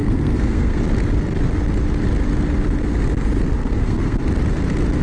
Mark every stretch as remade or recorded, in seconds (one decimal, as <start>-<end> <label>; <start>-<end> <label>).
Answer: 0.0-0.8 remade; 0.8-3.6 recorded; 3.6-4.2 remade; 4.2-5.0 recorded